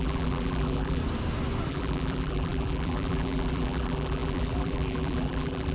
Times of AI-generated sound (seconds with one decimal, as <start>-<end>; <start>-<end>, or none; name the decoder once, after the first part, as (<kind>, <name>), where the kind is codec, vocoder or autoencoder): 0.0-1.0 (vocoder, BigVGAN v2); 1.7-5.7